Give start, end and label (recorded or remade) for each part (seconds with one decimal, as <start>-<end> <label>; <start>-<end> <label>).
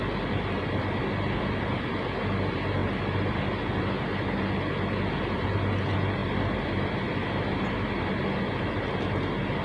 0.0-9.6 recorded